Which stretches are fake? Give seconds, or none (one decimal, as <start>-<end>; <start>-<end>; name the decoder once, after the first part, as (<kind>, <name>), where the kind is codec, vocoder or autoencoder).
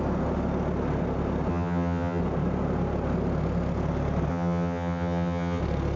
1.5-2.2 (vocoder, HiFi-GAN); 4.3-5.6